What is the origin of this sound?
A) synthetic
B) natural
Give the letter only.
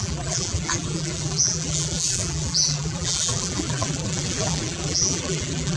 A